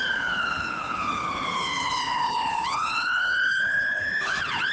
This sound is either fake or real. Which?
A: fake